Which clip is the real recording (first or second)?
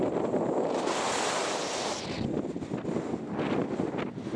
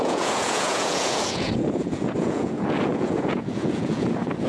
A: first